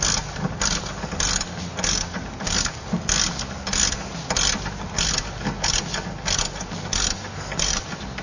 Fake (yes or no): no